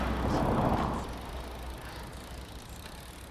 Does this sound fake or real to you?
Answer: real